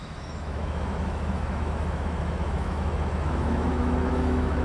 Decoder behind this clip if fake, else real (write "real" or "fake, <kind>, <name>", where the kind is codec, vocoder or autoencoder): fake, autoencoder, DAC-VAE